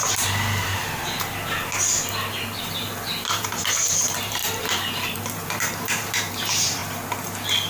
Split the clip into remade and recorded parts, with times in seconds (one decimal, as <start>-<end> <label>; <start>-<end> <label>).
0.0-2.6 recorded; 2.6-6.8 remade; 6.8-7.7 recorded